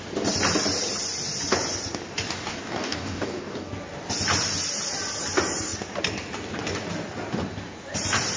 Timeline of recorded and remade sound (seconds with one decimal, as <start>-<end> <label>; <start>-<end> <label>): 0.0-2.5 recorded; 2.5-3.7 remade; 3.7-8.4 recorded